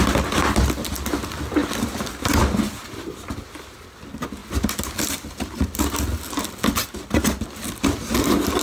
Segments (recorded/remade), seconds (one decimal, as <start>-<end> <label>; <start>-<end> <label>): 0.0-8.6 recorded